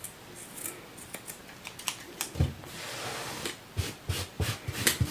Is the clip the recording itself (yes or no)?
yes